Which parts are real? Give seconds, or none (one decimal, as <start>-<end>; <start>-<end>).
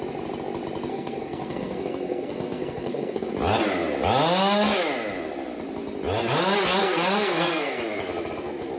0.0-0.9; 3.3-6.8; 7.8-8.8